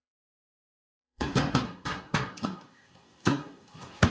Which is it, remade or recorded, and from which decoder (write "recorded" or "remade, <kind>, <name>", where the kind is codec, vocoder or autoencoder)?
remade, codec, SNAC